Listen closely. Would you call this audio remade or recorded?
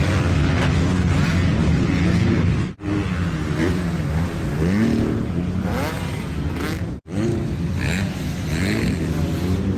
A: recorded